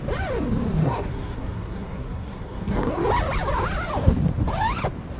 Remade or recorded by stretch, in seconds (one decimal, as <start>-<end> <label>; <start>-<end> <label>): 0.0-0.8 recorded; 0.8-2.9 remade; 2.9-5.2 recorded